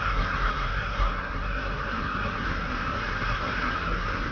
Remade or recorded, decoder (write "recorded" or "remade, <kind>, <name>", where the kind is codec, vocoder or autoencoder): remade, codec, SNAC